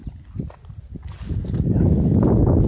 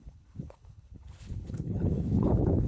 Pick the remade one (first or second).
second